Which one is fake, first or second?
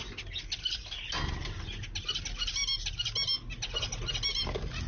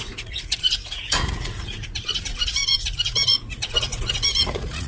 second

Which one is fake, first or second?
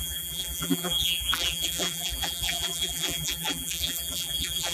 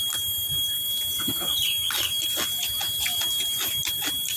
first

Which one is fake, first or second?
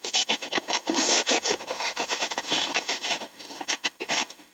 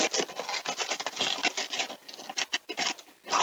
first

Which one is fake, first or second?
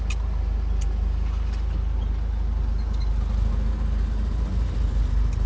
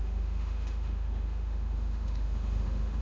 second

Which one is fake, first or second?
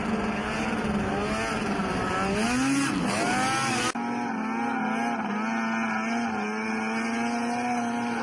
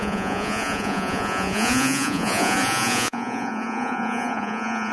second